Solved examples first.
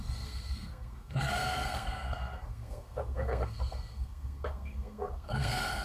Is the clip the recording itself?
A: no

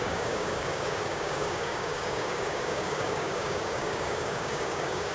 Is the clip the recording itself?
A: no